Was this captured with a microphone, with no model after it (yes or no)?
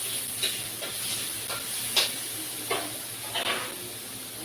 yes